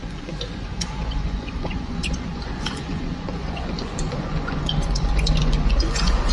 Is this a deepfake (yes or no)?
yes